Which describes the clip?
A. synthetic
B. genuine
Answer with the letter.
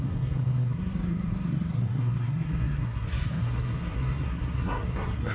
A